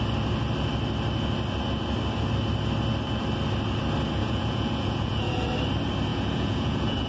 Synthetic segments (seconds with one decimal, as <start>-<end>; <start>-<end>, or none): 4.2-5.5; 6.1-7.1